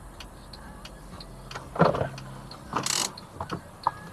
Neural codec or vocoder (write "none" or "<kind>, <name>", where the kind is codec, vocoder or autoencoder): none